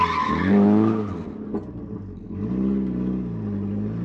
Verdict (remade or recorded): recorded